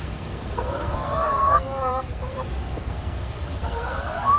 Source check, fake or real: fake